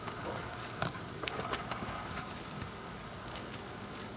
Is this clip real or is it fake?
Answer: fake